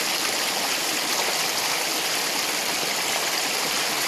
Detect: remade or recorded recorded